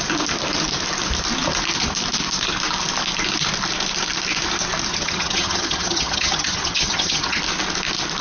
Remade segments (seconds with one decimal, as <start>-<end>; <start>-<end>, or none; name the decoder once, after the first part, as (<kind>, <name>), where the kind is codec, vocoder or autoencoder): 4.9-7.4 (vocoder, HiFi-GAN)